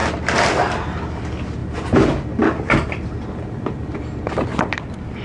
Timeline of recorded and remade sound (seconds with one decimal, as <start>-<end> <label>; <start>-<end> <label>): 0.0-5.2 recorded